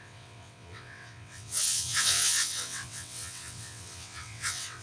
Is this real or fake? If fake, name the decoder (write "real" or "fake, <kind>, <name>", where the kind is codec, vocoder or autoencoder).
fake, vocoder, WaveNeXt